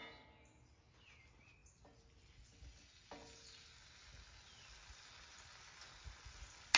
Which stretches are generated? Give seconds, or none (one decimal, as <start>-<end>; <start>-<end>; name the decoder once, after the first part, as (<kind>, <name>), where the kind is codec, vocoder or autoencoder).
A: none